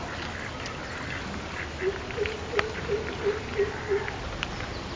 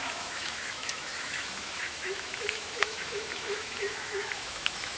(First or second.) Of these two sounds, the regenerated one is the second